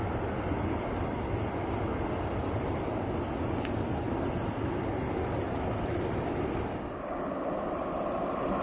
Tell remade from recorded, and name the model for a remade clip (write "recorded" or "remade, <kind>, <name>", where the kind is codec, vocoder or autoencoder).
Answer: recorded